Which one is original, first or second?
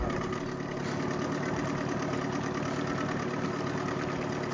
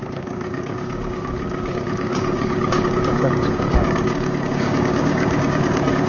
first